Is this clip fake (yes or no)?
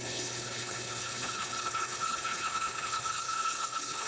yes